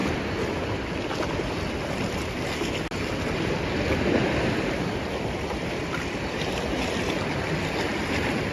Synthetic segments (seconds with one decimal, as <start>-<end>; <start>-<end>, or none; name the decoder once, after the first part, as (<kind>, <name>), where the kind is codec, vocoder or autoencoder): none